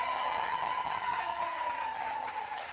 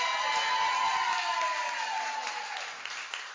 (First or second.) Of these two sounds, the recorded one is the second